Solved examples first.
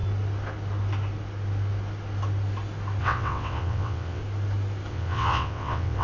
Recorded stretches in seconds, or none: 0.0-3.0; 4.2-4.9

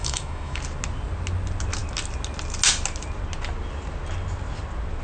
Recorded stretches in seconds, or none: 0.6-5.0

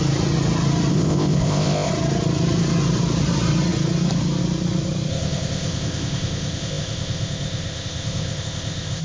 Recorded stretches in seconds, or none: 0.0-0.9; 1.9-5.1

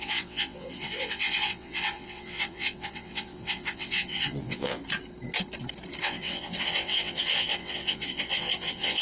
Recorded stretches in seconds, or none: 4.8-6.0